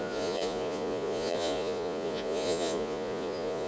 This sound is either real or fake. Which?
fake